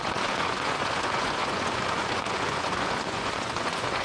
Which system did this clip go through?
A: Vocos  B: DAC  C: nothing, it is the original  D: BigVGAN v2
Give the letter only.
A